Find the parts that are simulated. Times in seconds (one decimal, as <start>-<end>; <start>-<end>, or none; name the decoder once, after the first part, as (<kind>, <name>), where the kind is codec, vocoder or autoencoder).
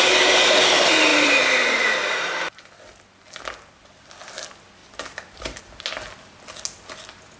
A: 1.1-2.5 (vocoder, BigVGAN v2); 4.8-5.6